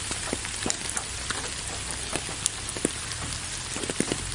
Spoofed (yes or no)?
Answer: no